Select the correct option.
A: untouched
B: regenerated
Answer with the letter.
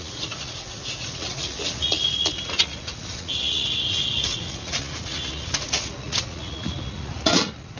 B